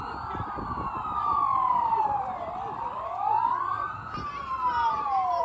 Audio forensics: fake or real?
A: fake